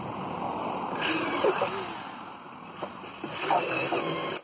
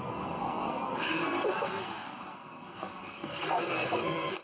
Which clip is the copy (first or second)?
second